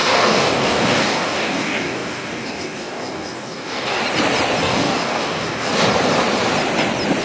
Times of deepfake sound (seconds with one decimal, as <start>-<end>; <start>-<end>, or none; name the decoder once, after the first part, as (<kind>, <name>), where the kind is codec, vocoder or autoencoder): 0.0-4.0 (codec, DAC); 4.6-5.7